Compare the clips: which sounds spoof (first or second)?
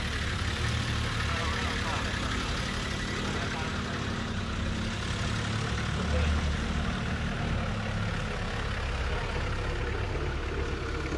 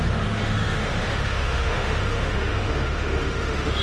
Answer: second